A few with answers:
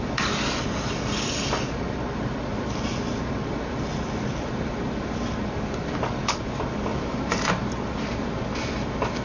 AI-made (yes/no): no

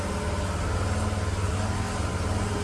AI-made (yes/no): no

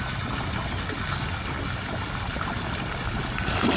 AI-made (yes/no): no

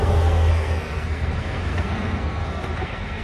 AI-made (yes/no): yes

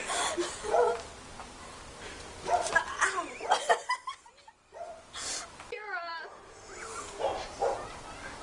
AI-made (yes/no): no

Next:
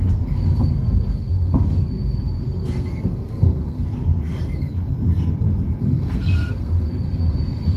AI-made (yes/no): yes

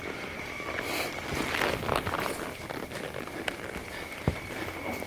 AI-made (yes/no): no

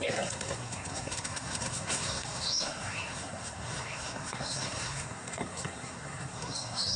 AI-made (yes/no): yes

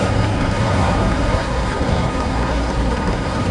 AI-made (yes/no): yes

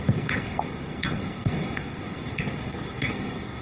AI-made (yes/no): yes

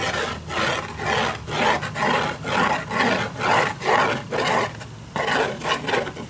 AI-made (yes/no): no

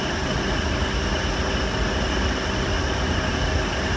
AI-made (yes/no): no